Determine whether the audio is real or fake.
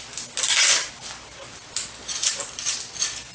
real